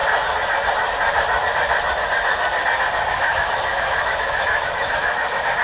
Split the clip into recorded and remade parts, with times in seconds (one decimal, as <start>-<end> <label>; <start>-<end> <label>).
0.0-3.1 recorded; 3.1-5.6 remade